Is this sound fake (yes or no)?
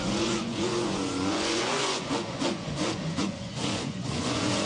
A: yes